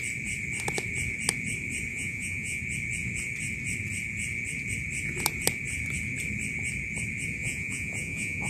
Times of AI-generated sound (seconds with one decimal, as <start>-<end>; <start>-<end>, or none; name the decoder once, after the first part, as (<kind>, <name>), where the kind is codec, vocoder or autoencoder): 1.9-2.6 (vocoder, Vocos); 7.4-8.5